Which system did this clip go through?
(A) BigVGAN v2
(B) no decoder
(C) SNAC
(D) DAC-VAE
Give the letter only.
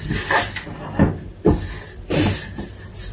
B